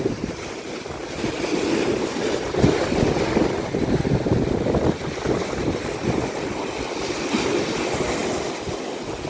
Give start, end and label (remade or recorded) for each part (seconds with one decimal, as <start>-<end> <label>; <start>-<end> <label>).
0.0-9.3 recorded

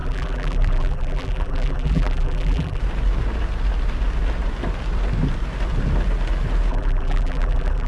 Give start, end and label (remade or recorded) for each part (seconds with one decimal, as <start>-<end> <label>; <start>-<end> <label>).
0.0-2.8 remade; 2.8-6.7 recorded; 6.7-7.9 remade

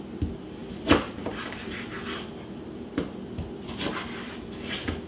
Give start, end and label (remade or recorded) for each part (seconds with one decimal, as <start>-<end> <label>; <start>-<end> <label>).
0.0-5.1 recorded

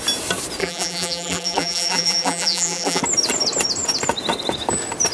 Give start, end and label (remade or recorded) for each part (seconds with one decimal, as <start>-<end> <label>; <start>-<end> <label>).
0.0-0.6 recorded; 0.6-3.0 remade; 3.0-5.1 recorded